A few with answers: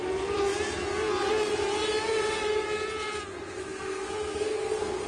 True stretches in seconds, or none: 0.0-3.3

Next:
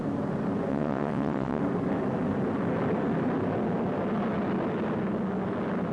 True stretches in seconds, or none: 0.0-0.7; 1.6-5.9